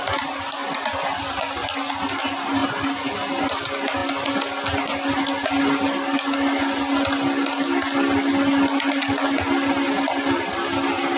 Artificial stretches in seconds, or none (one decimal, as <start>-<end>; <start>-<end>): none